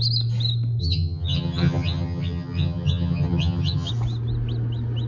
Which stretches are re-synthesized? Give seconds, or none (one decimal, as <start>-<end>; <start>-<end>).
0.8-3.9